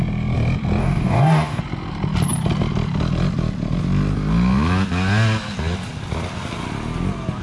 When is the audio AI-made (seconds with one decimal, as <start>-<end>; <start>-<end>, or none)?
0.8-1.6